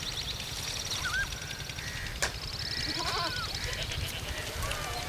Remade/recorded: recorded